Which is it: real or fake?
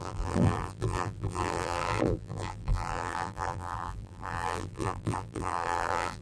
fake